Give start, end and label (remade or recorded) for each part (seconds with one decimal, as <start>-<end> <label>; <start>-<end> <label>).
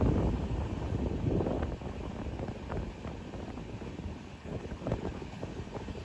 0.0-4.3 recorded; 4.3-5.4 remade; 5.4-6.0 recorded